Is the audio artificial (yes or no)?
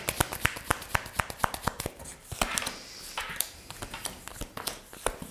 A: no